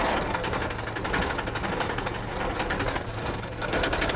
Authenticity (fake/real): real